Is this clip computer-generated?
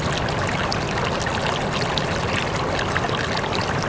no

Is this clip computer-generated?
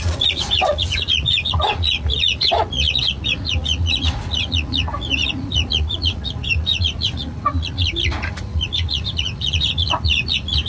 yes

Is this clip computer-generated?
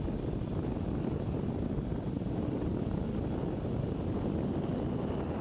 no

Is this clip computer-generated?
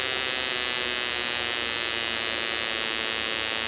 no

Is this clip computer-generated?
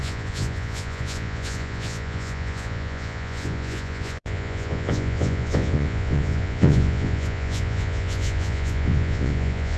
yes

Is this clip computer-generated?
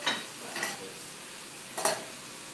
no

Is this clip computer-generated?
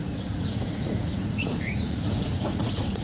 yes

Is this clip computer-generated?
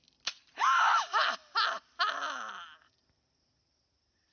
no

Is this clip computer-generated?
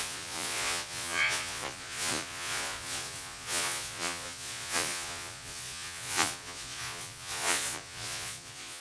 yes